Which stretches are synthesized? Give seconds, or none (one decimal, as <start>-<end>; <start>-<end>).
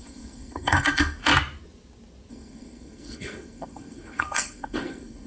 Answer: 0.0-1.3; 2.3-5.3